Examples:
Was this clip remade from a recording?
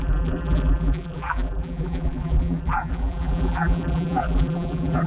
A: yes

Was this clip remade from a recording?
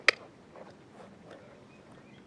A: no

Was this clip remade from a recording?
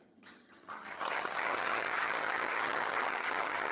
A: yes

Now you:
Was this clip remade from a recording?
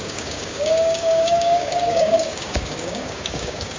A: yes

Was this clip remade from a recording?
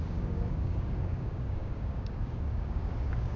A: yes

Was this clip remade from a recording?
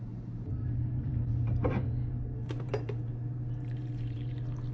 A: yes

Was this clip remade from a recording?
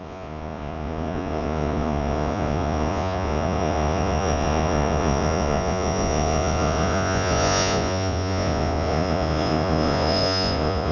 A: yes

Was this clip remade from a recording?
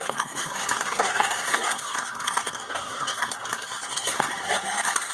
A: yes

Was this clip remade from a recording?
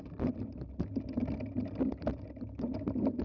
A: no